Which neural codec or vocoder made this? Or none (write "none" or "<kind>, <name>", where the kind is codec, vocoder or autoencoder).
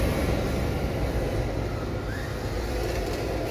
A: none